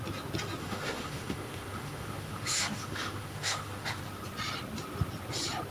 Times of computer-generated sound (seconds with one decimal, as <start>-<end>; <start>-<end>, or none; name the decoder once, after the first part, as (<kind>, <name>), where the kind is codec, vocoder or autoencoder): 0.6-4.0 (autoencoder, DAC-VAE)